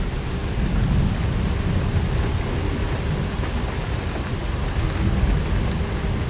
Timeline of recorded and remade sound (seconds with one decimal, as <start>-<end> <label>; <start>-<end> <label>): 0.0-6.3 recorded